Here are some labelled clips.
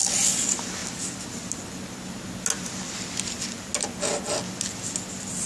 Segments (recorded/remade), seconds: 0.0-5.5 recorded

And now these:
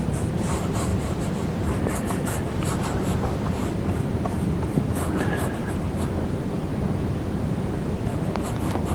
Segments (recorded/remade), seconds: 0.0-6.7 remade; 6.7-8.9 recorded

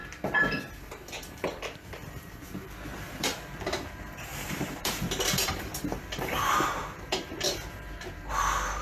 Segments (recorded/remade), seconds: 0.0-0.7 recorded; 0.7-8.8 remade

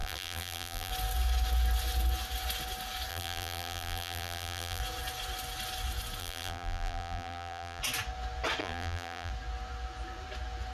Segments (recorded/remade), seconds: 0.0-0.9 remade; 0.9-3.1 recorded; 3.1-4.8 remade; 4.8-6.2 recorded; 6.2-7.8 remade; 7.8-8.6 recorded; 8.6-9.3 remade; 9.3-10.7 recorded